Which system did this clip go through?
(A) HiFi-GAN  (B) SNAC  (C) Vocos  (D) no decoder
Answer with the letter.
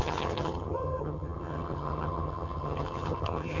A